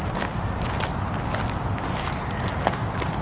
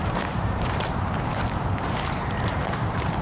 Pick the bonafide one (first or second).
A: first